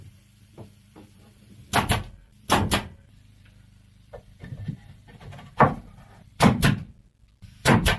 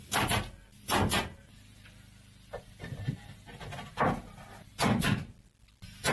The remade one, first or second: first